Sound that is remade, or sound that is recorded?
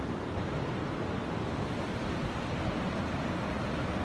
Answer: remade